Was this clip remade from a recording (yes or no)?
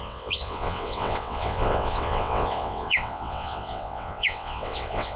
yes